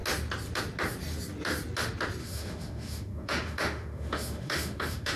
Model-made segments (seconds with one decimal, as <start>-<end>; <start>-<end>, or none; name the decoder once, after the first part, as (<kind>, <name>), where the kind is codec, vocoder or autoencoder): 2.2-5.2 (autoencoder, DAC-VAE)